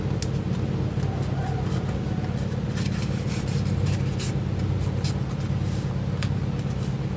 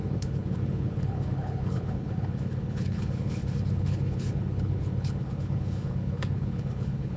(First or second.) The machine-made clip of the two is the second